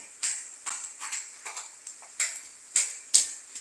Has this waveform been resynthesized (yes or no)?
no